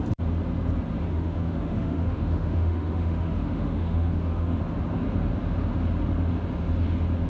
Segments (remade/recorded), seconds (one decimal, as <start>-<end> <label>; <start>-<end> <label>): 0.0-1.1 recorded; 1.1-4.6 remade; 4.6-7.3 recorded